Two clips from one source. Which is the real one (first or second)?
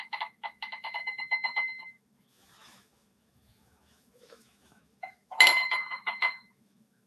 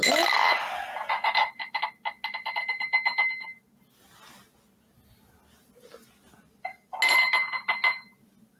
second